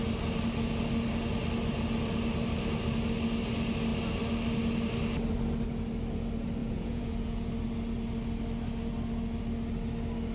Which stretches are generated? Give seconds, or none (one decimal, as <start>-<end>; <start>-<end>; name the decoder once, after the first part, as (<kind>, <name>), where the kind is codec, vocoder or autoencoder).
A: 6.6-7.5 (vocoder, Vocos)